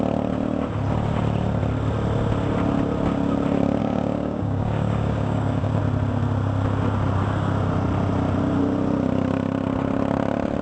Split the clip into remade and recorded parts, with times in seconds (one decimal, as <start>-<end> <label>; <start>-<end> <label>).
0.0-3.8 recorded; 3.8-5.8 remade; 5.8-10.6 recorded